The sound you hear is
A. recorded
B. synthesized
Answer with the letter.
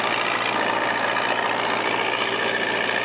A